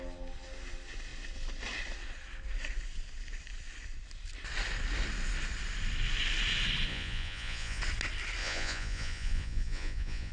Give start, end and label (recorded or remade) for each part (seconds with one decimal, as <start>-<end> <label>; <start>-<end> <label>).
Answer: 0.0-6.9 recorded; 6.9-7.8 remade; 7.8-8.4 recorded; 8.4-10.3 remade